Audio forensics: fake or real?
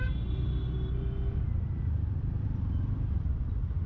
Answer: real